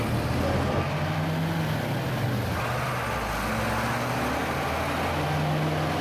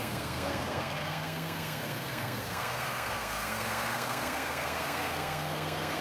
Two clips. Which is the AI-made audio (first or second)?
second